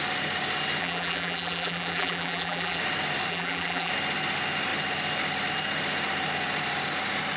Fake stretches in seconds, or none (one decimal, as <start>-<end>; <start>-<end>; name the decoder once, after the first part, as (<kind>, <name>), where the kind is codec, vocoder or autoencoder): 0.8-2.8 (vocoder, BigVGAN v2); 3.3-3.9